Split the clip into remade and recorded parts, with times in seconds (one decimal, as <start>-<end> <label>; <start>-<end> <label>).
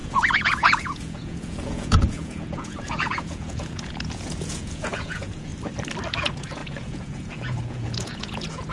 0.0-5.5 remade; 5.5-6.1 recorded; 6.1-8.7 remade